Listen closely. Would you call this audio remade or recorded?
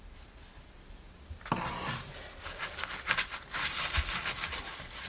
recorded